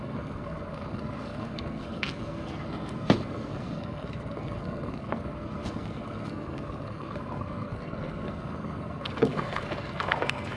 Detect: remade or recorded remade